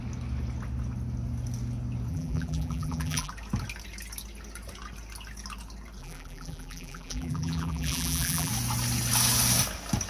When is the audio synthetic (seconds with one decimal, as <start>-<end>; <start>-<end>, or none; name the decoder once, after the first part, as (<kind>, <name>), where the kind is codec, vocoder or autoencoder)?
2.1-3.3 (vocoder, BigVGAN v2); 6.0-8.5